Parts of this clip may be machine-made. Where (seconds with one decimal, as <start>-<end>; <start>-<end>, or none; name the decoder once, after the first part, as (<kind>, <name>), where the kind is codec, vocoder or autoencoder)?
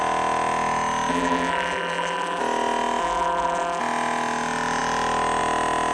1.1-2.4 (vocoder, BigVGAN v2); 3.0-3.8